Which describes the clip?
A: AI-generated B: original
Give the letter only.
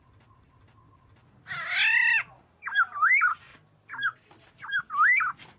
B